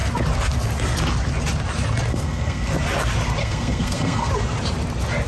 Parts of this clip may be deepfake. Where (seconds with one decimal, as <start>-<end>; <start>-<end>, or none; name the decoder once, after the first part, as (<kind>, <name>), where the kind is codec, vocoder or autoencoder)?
2.1-2.7 (codec, SNAC); 3.4-4.3

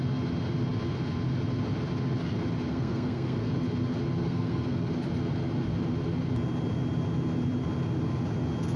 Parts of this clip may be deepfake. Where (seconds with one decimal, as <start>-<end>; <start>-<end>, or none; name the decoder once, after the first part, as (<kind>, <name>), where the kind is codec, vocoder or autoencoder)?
2.7-3.5 (codec, SNAC); 4.2-4.9

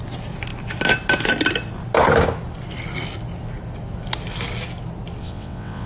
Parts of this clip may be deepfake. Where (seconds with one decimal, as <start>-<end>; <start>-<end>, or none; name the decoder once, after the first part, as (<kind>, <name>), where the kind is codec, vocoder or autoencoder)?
5.2-5.9 (vocoder, WaveNeXt)

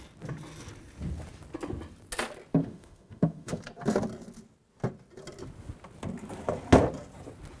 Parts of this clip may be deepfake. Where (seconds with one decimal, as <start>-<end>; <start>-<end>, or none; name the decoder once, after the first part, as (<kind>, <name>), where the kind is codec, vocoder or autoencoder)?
2.6-3.6 (autoencoder, DAC-VAE)

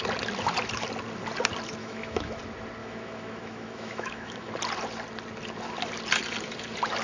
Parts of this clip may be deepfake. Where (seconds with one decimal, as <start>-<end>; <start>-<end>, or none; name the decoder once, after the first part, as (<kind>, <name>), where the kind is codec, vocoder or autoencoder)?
1.8-2.4 (autoencoder, DAC-VAE); 2.8-4.5

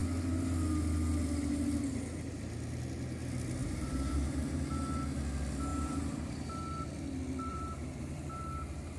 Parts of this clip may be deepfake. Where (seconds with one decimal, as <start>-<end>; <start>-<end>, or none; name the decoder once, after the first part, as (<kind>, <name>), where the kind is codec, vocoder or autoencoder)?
3.6-4.6 (vocoder, BigVGAN v2); 5.7-6.3; 7.5-8.4

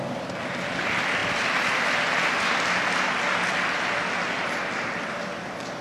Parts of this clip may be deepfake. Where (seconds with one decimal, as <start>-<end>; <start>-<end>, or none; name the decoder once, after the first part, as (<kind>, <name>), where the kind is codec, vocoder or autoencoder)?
none

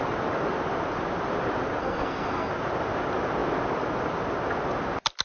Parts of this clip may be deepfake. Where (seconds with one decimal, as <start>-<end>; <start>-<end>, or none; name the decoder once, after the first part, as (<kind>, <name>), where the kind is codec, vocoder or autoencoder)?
1.8-2.5 (codec, SNAC)